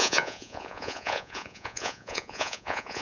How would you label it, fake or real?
fake